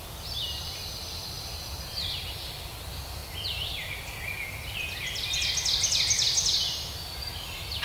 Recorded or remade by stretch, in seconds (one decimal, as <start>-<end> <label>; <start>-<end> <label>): 0.0-7.8 recorded